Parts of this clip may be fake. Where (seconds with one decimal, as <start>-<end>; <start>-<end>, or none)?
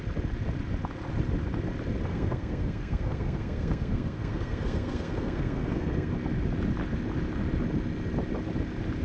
2.1-6.1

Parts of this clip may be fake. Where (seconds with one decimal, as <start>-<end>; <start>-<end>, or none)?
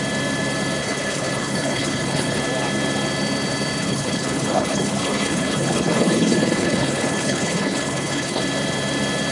0.8-2.4; 3.8-8.4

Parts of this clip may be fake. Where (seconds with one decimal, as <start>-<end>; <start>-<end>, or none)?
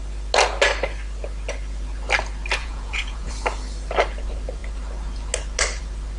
2.6-3.3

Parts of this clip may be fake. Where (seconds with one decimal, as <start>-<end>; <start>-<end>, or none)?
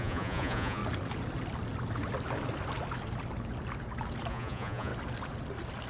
0.0-0.8; 4.3-4.9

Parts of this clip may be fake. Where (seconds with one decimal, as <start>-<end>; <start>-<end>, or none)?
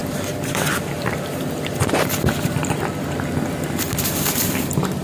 0.0-5.0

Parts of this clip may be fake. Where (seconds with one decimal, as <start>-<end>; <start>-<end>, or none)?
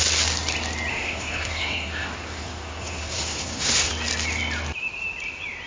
0.9-3.9